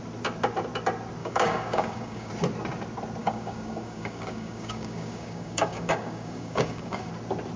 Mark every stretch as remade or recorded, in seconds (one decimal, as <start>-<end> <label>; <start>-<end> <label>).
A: 0.0-1.2 recorded; 1.2-2.3 remade; 2.3-3.2 recorded; 3.2-7.1 remade; 7.1-7.6 recorded